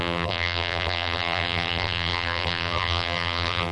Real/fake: fake